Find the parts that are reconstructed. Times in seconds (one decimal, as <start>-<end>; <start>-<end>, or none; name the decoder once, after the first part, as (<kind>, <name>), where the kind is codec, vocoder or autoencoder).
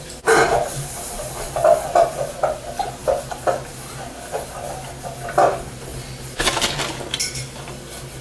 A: none